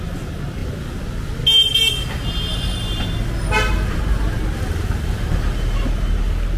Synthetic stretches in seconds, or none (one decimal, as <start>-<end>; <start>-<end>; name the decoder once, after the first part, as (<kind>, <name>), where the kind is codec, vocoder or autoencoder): none

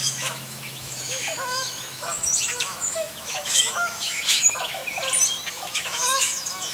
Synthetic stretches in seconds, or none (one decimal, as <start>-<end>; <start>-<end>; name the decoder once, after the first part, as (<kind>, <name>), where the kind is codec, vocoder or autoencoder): 0.0-4.8 (autoencoder, DAC-VAE); 5.5-6.7

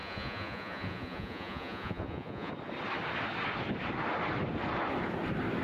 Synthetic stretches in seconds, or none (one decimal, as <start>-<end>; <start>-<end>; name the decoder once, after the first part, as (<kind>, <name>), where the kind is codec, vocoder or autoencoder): 0.0-2.5 (vocoder, Vocos)

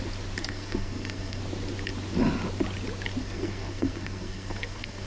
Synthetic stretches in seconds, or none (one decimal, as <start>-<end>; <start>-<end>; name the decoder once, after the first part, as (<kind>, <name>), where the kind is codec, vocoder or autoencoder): 0.4-1.4 (codec, SNAC); 3.2-5.1

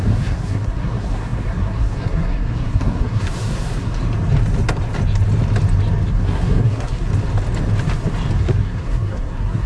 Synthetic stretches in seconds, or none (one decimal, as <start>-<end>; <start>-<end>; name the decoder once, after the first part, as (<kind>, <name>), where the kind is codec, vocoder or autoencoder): 0.0-4.0 (codec, SNAC); 6.1-7.1; 8.4-9.7